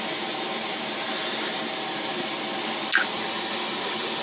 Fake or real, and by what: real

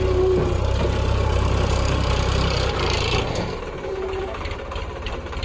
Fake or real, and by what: fake, vocoder, BigVGAN v2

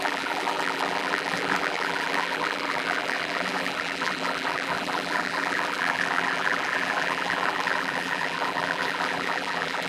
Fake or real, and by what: fake, vocoder, BigVGAN v2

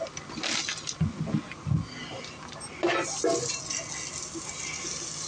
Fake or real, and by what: real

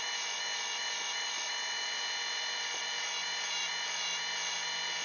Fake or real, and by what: real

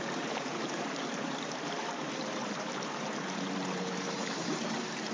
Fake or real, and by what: fake, vocoder, BigVGAN v2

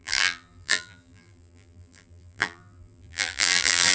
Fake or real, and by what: fake, vocoder, BigVGAN v2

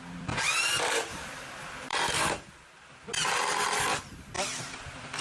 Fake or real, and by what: fake, vocoder, BigVGAN v2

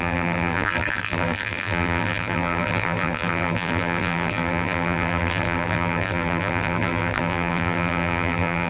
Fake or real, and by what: fake, vocoder, BigVGAN v2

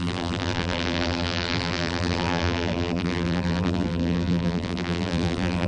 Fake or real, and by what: fake, vocoder, BigVGAN v2